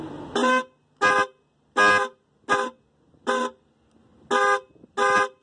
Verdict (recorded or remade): recorded